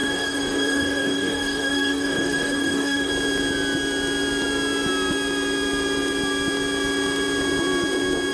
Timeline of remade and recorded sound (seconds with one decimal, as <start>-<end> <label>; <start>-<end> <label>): 0.0-3.1 remade; 3.1-8.3 recorded